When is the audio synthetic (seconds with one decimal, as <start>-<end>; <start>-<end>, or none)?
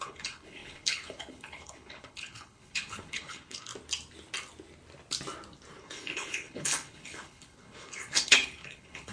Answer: 0.0-3.7; 5.8-9.1